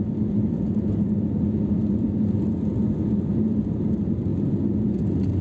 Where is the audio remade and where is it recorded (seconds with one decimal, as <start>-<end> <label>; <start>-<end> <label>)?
0.0-4.3 remade; 4.3-4.8 recorded; 4.8-5.4 remade